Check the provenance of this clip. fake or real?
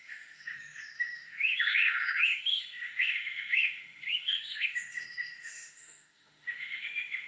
fake